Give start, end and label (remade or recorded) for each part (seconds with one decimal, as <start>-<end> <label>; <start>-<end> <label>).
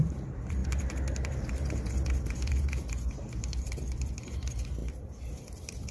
0.0-5.9 remade